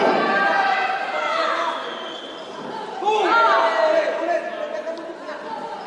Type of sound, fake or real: real